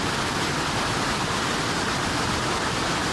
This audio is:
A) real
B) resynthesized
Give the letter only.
B